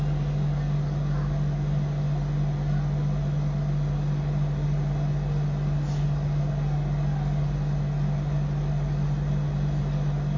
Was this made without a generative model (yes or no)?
yes